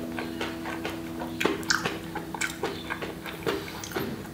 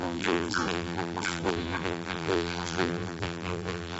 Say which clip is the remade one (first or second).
second